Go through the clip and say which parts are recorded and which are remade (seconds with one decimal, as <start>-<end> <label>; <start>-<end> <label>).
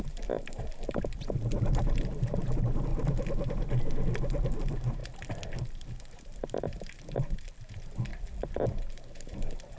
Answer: 0.0-2.9 remade; 2.9-4.6 recorded; 4.6-5.0 remade; 5.0-5.6 recorded; 5.6-8.1 remade; 8.1-8.8 recorded; 8.8-9.8 remade